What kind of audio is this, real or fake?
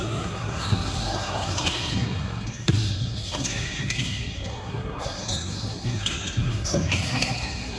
fake